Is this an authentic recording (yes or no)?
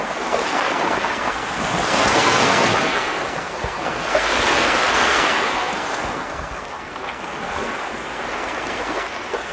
no